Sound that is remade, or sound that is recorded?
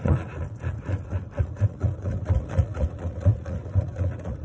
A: remade